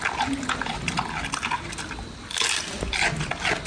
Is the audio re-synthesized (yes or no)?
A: no